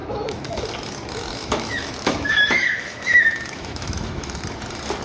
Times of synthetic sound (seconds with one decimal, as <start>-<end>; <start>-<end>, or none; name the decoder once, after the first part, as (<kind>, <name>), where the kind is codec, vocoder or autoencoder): 0.0-0.6 (autoencoder, DAC-VAE); 1.4-4.4